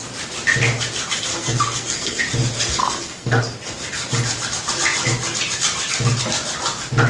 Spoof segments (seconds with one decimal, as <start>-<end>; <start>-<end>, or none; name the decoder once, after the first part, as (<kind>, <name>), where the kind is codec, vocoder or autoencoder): 1.3-2.2 (codec, SNAC); 2.8-3.4

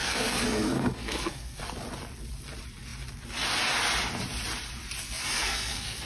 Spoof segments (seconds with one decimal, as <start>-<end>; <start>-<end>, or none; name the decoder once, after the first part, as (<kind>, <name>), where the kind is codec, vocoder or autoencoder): 0.0-1.6 (codec, SNAC); 5.0-6.1

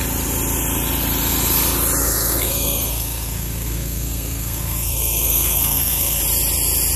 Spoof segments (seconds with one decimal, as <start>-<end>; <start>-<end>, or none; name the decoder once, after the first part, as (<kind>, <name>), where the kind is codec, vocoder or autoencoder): 2.0-6.2 (codec, SNAC)

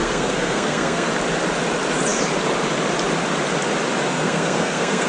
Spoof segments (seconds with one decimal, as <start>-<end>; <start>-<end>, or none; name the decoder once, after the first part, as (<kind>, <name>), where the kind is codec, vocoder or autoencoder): 0.0-1.1 (codec, SNAC); 4.1-5.1

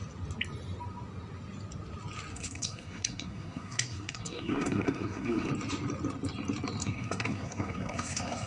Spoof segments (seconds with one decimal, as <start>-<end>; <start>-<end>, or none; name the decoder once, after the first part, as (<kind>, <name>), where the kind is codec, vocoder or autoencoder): 2.3-5.5 (codec, SNAC); 6.8-8.5

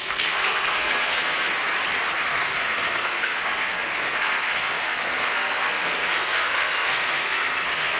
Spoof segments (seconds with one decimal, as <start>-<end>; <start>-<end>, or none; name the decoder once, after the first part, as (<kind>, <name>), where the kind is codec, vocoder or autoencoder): 0.0-1.5 (codec, SNAC); 2.2-8.0